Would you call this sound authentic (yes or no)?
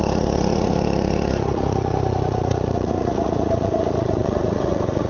no